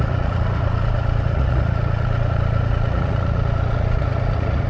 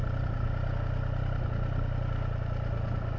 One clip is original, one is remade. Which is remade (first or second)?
first